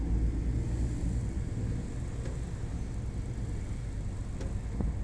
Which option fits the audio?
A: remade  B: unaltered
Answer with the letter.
B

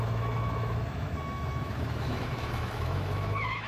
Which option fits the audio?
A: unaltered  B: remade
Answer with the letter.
B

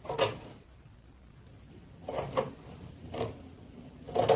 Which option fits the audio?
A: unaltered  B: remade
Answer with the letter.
A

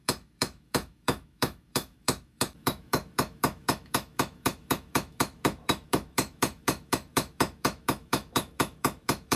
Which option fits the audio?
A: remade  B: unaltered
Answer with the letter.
A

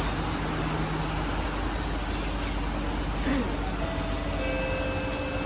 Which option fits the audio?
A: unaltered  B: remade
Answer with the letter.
A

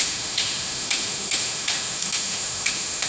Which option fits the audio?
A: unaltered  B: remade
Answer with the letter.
B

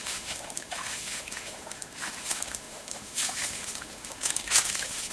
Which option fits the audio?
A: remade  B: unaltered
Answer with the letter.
A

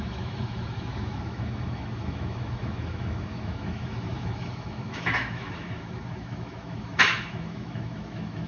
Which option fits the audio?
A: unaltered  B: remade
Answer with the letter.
B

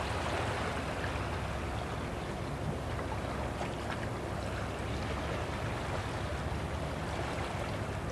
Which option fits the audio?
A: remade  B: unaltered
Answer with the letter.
B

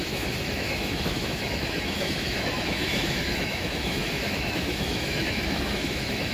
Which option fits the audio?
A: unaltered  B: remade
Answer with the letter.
B